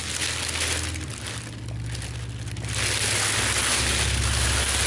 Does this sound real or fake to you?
real